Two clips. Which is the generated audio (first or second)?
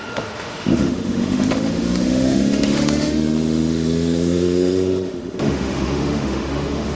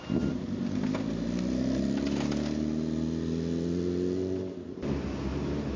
first